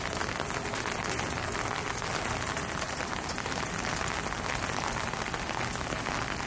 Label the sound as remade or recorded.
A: recorded